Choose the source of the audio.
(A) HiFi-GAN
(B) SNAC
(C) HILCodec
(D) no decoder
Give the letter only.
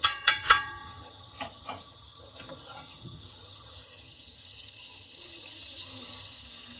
A